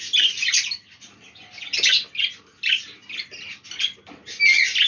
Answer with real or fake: real